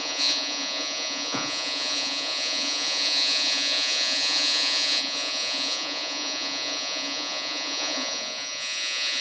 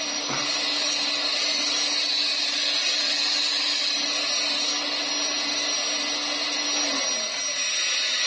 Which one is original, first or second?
second